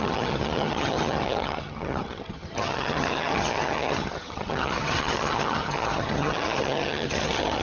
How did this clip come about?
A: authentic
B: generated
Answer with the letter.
B